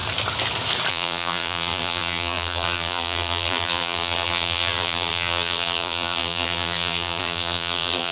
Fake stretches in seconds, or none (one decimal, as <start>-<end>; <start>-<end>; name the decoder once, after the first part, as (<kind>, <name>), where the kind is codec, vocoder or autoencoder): 0.9-8.1 (vocoder, BigVGAN v2)